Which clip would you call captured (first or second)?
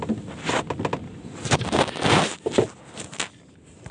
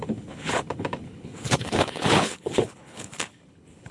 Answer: first